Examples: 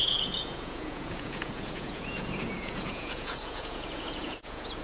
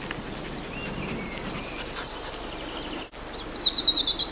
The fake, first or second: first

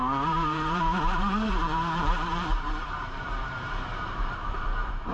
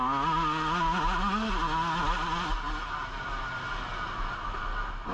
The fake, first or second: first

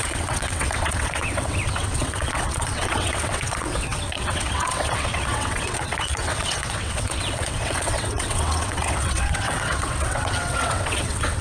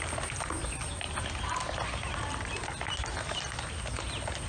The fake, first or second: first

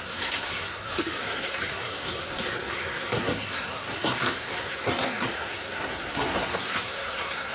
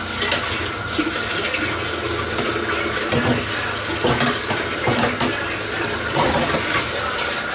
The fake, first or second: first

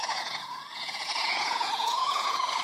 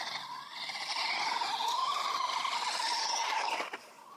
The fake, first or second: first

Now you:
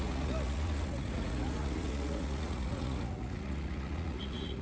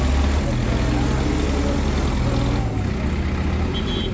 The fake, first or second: first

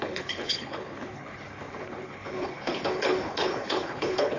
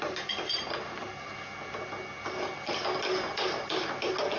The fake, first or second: first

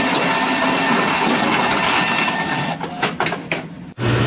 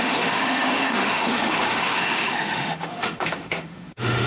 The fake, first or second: second